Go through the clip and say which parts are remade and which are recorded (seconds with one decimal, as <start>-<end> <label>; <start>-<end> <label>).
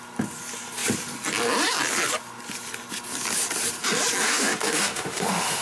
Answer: 0.0-4.2 recorded; 4.2-5.6 remade